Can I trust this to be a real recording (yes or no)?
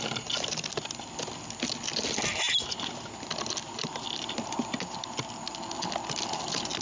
yes